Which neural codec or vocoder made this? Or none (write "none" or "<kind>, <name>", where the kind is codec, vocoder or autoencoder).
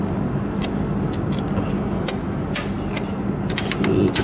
none